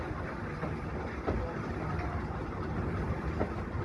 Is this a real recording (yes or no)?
yes